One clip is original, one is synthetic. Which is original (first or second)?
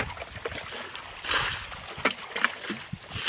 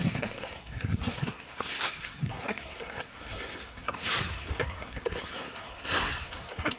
first